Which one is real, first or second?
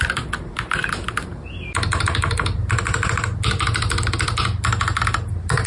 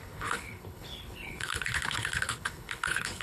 first